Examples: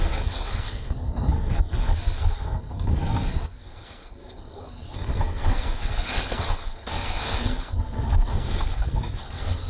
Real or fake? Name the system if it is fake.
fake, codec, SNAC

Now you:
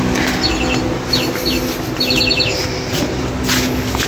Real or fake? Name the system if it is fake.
real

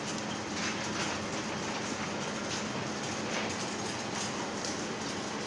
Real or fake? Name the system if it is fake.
real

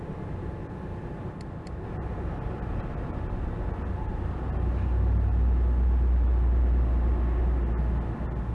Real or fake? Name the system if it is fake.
real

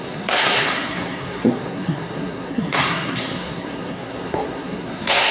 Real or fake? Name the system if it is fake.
fake, codec, SNAC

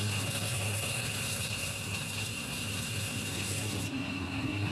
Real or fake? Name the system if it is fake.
fake, codec, SNAC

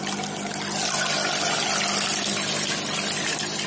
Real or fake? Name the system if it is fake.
real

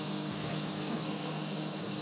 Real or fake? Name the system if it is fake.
fake, codec, SNAC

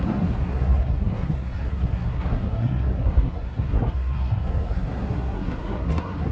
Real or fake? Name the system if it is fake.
fake, codec, SNAC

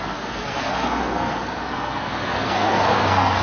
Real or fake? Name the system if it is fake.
fake, codec, SNAC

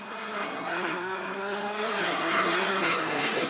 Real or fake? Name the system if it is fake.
fake, codec, SNAC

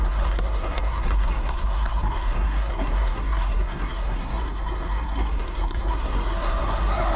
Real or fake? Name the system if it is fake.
fake, codec, SNAC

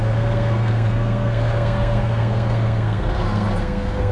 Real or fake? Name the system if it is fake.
fake, codec, SNAC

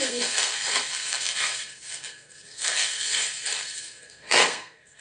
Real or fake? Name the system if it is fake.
fake, codec, SNAC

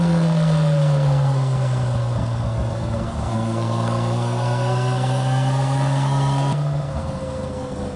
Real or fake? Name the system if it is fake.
fake, codec, SNAC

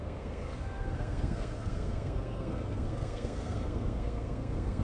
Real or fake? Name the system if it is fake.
fake, codec, SNAC